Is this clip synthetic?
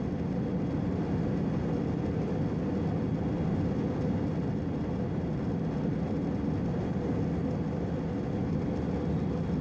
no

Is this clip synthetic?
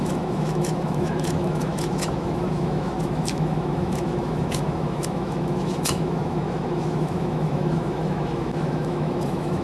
yes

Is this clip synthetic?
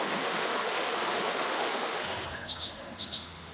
yes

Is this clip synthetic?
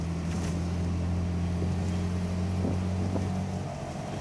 no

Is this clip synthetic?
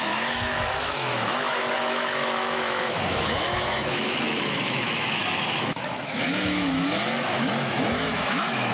yes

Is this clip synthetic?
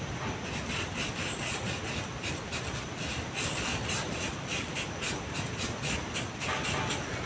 no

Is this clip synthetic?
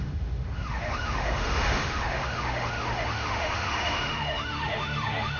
yes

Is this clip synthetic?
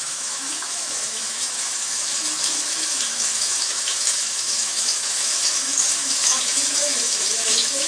yes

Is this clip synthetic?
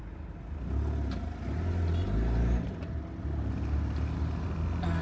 no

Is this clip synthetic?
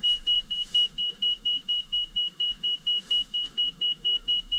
yes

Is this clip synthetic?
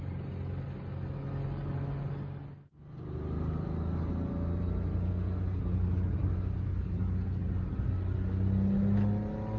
no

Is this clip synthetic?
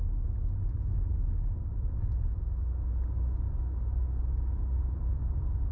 no